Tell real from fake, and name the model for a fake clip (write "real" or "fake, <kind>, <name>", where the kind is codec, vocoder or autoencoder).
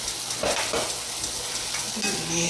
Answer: real